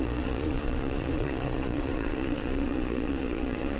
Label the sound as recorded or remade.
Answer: remade